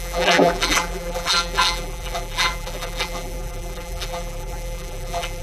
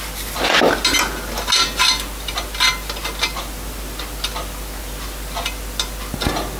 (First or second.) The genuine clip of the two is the second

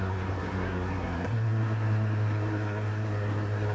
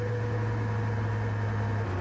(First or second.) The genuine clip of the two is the second